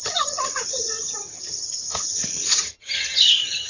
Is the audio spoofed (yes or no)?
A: yes